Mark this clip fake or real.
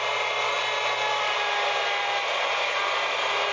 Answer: real